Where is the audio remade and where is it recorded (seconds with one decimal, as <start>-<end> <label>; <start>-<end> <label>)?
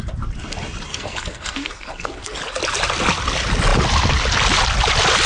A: 0.0-0.9 recorded; 0.9-2.4 remade; 2.4-5.3 recorded